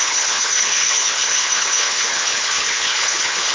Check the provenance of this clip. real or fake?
fake